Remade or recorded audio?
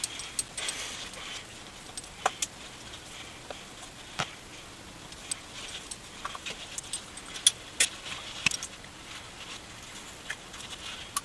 recorded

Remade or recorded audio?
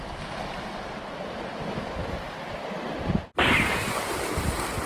recorded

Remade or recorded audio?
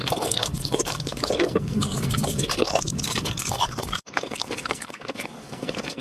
remade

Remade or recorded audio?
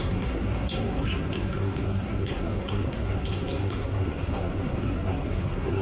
remade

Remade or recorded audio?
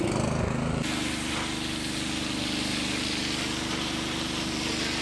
recorded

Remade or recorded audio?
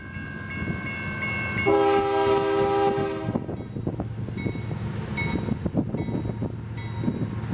recorded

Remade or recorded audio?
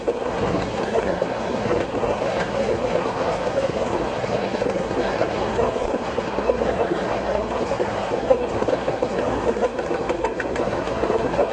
remade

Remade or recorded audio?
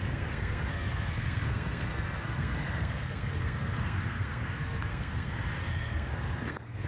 remade